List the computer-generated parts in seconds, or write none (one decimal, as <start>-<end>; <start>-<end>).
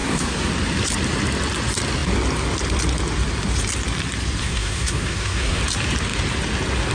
0.0-0.5; 4.4-5.6